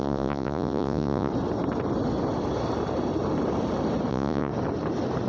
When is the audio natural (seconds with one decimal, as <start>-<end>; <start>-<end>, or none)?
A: 1.3-4.1; 4.5-5.3